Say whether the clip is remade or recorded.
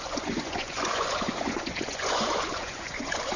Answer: remade